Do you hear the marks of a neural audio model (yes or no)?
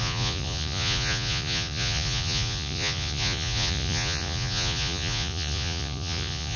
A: yes